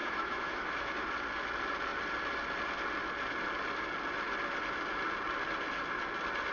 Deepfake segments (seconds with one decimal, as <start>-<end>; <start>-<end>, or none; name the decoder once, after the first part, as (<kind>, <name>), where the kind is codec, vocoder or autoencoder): 0.0-0.9 (autoencoder, DAC-VAE)